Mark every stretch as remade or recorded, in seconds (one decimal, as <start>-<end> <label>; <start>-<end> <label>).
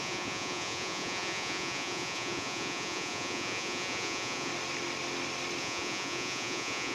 0.0-4.5 remade; 4.5-5.6 recorded; 5.6-6.9 remade